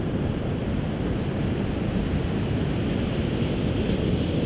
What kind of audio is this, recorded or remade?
recorded